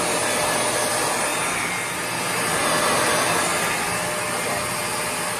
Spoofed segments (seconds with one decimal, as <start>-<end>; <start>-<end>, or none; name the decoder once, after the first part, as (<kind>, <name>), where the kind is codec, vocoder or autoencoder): none